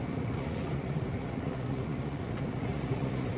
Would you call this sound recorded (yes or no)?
no